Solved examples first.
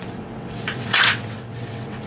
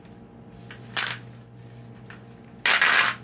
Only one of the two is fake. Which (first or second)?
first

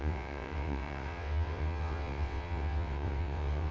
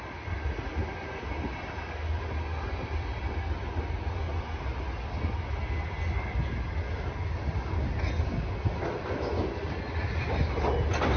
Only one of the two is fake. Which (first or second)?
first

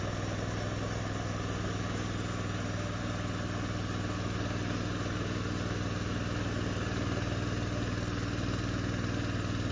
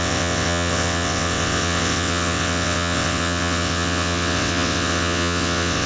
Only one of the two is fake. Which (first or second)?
second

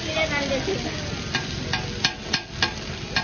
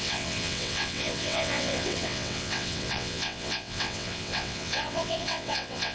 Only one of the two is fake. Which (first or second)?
second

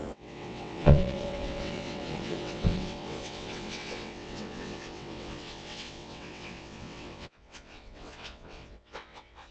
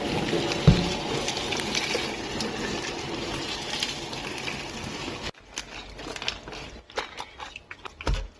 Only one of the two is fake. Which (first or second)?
first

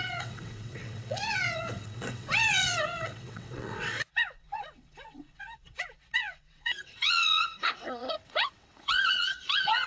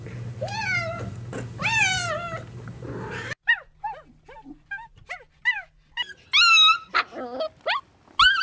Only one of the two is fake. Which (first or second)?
first